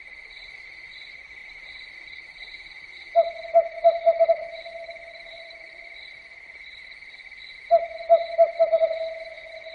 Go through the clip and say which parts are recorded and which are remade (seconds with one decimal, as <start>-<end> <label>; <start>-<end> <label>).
0.0-9.7 recorded